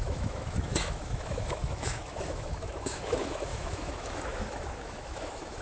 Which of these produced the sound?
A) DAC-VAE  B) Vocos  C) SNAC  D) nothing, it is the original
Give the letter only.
A